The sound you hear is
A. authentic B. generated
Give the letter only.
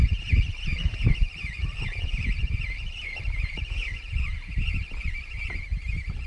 B